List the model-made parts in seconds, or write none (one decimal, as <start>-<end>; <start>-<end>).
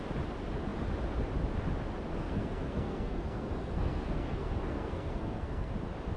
2.1-5.7